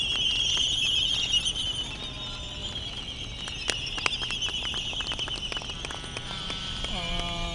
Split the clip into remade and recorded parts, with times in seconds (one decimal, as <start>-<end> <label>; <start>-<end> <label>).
0.0-7.5 recorded